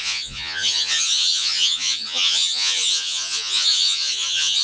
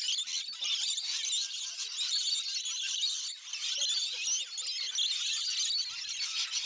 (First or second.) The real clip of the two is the second